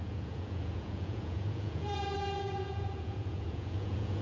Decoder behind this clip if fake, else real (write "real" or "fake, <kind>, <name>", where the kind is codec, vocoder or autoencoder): fake, vocoder, Vocos